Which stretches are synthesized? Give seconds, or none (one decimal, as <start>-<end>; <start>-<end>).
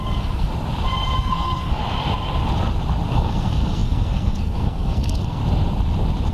0.0-0.5; 1.2-1.8; 3.1-5.4